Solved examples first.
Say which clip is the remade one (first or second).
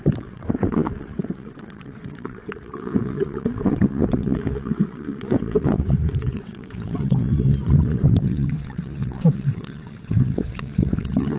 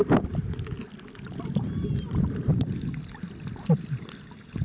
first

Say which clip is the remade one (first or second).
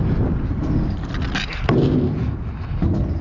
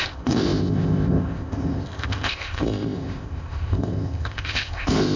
second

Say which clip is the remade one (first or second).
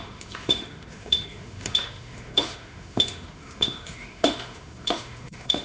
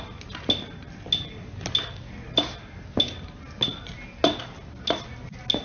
first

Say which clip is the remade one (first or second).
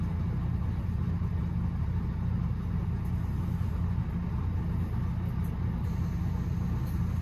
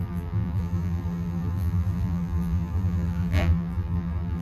second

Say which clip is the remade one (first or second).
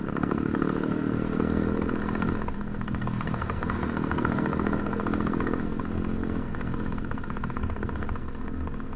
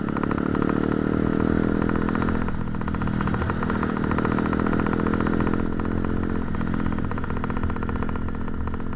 first